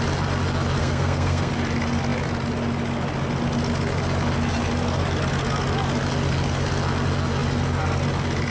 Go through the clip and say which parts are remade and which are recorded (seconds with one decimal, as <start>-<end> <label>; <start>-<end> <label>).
0.0-0.8 recorded; 0.8-1.5 remade; 1.5-8.5 recorded